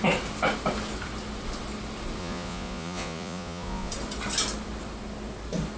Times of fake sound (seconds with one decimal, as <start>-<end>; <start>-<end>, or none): 2.2-3.9